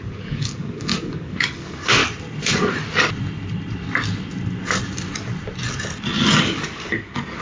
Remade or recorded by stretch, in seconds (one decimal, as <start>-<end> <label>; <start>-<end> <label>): 0.0-2.0 remade; 2.0-6.4 recorded; 6.4-7.4 remade